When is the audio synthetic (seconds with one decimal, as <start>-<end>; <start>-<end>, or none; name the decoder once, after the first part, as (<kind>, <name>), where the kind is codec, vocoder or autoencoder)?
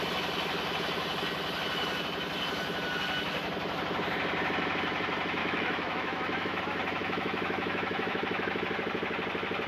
5.4-6.6 (autoencoder, DAC-VAE); 7.0-8.6